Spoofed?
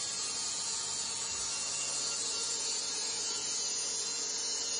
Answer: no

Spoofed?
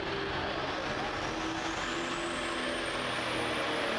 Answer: no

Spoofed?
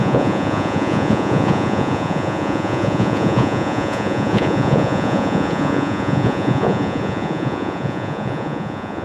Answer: yes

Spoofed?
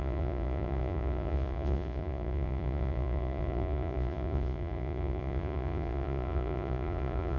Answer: yes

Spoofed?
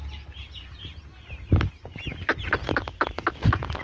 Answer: no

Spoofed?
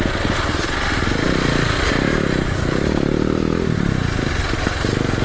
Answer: no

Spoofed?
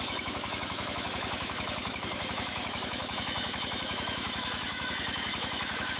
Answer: yes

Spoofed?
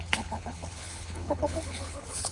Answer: yes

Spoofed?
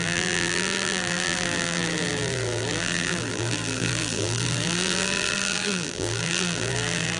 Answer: yes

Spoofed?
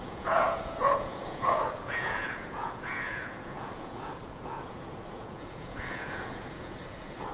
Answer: yes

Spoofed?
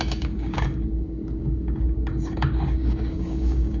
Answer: yes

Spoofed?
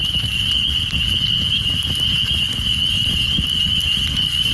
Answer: no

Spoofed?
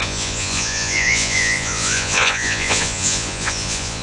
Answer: yes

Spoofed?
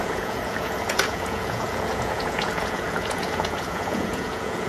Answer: yes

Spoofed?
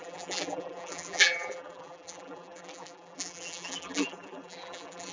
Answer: yes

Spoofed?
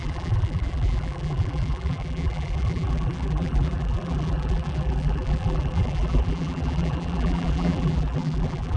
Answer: yes